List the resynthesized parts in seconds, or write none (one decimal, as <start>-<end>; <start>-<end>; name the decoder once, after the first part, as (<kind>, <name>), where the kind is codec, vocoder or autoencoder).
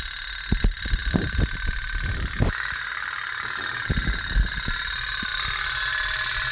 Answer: 1.0-2.9 (vocoder, BigVGAN v2)